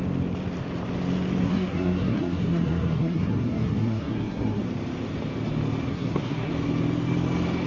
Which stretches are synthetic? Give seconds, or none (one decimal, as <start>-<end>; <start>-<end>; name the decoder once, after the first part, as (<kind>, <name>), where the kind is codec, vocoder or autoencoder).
1.4-4.6 (codec, SNAC); 5.9-6.5